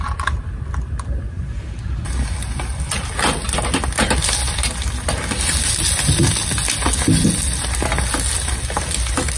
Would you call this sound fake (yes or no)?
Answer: no